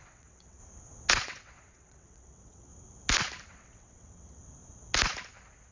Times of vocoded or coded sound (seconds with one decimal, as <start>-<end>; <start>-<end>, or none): 0.0-0.6; 1.1-2.7; 3.5-4.4